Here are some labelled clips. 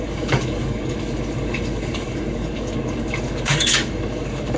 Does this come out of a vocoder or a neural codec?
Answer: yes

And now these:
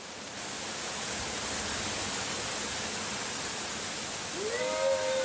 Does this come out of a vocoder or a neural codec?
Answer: no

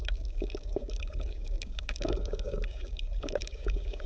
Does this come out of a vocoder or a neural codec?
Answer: yes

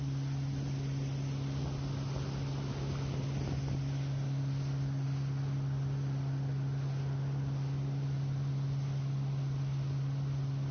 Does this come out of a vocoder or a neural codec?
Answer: no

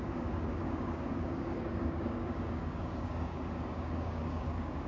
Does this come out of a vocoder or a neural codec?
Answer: yes